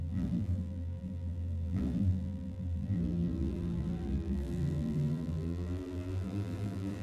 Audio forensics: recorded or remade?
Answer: remade